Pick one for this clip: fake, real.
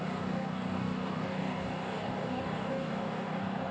fake